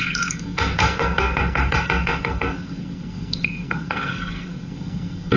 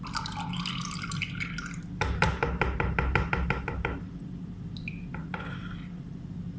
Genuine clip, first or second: second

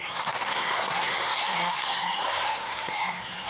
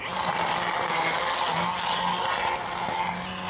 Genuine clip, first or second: second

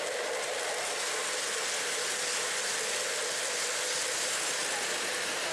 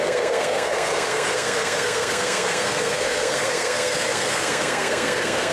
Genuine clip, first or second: first